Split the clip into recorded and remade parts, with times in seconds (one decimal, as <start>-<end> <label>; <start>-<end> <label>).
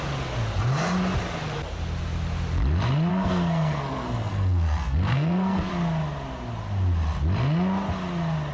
0.0-3.1 recorded; 3.1-5.7 remade; 5.7-8.5 recorded